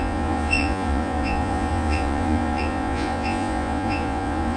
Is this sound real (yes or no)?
no